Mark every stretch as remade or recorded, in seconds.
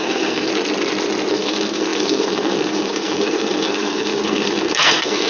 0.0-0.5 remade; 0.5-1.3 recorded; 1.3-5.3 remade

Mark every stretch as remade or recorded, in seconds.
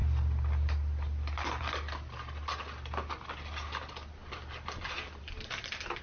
0.0-6.0 recorded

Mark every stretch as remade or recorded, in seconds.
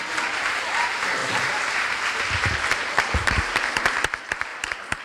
0.0-4.5 remade; 4.5-5.0 recorded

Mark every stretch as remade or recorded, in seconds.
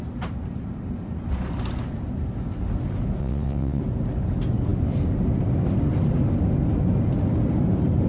0.0-3.2 recorded; 3.2-3.8 remade; 3.8-8.1 recorded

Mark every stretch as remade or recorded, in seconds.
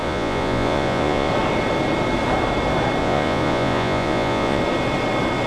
0.0-1.3 remade; 1.3-3.0 recorded; 3.0-4.6 remade; 4.6-5.5 recorded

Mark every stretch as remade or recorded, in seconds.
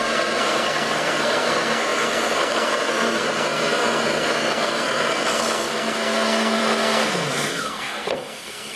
0.0-8.8 remade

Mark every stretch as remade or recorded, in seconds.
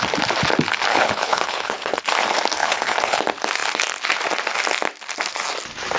0.0-0.9 recorded; 0.9-2.0 remade; 2.0-2.6 recorded; 2.6-3.2 remade; 3.2-6.0 recorded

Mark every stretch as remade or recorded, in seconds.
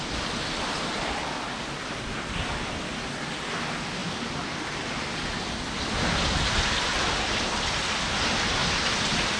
0.0-9.4 recorded